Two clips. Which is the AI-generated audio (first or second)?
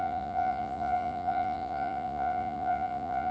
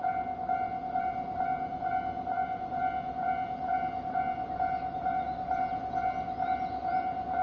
first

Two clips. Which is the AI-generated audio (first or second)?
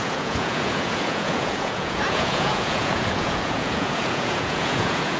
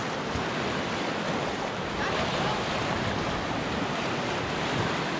first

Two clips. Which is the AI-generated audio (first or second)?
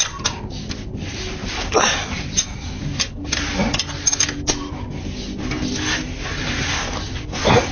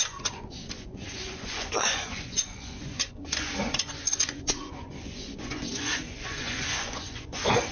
second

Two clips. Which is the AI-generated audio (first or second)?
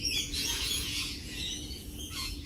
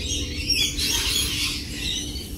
first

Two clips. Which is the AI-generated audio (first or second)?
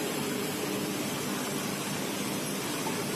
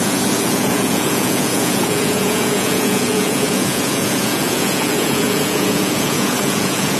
second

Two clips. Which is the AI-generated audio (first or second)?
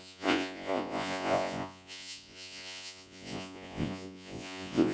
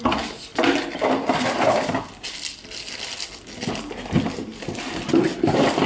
first